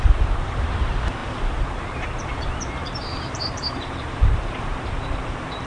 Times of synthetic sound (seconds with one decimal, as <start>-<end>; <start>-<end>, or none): 0.0-5.7